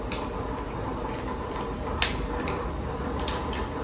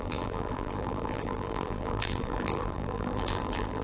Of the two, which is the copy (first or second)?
second